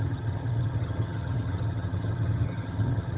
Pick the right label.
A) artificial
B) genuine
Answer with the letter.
A